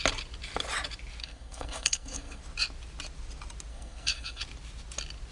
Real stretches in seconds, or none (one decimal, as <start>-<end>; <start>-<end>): 0.0-1.2; 2.4-3.7; 4.4-5.3